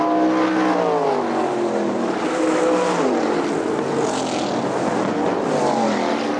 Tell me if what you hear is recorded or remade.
recorded